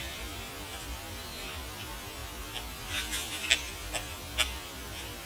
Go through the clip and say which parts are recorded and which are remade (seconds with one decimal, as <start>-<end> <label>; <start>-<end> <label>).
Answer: 0.0-5.3 recorded